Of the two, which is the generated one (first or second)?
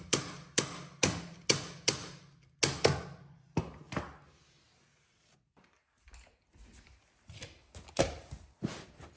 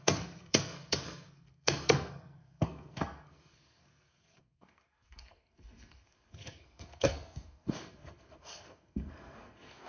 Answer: second